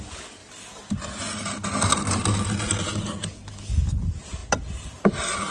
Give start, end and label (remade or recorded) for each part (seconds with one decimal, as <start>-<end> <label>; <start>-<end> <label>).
0.0-2.9 recorded; 2.9-4.0 remade; 4.0-5.5 recorded